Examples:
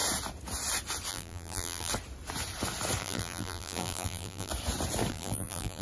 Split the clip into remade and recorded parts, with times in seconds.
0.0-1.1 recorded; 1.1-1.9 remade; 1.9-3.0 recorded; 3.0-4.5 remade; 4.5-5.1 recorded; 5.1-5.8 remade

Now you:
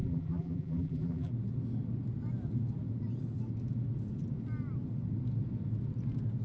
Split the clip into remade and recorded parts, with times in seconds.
0.0-1.3 remade; 1.3-6.4 recorded

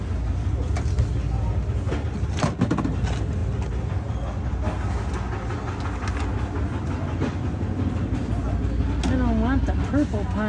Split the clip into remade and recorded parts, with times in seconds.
0.0-10.5 recorded

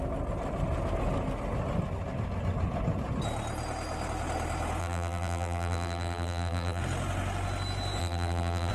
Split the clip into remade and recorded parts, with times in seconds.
0.0-4.8 recorded; 4.8-6.8 remade; 6.8-8.0 recorded; 8.0-8.7 remade

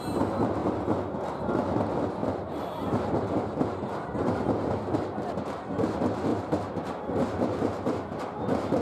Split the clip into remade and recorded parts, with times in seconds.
0.0-2.2 recorded; 2.2-3.8 remade; 3.8-6.3 recorded; 6.3-8.2 remade; 8.2-8.8 recorded

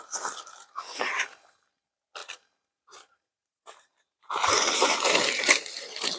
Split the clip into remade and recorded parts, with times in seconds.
0.0-2.2 recorded; 2.2-6.2 remade

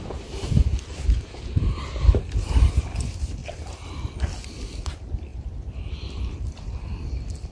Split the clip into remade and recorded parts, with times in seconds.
0.0-3.4 recorded; 3.4-4.0 remade; 4.0-5.3 recorded; 5.3-7.5 remade

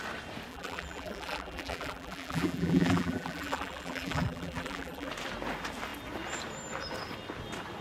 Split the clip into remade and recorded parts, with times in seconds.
0.0-0.5 recorded; 0.5-5.1 remade; 5.1-7.8 recorded